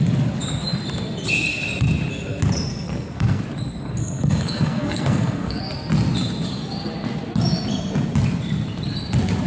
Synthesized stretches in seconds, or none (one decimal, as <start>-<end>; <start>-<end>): 2.7-3.4; 4.0-5.6